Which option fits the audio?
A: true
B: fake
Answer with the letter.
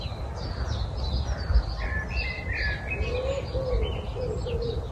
A